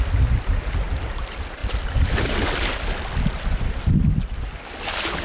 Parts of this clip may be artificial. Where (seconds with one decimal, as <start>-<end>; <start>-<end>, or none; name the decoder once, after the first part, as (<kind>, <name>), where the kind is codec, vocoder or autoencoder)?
none